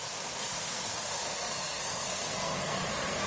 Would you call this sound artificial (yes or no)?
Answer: yes